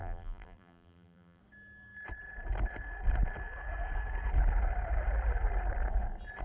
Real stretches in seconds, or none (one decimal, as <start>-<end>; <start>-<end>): 1.4-6.4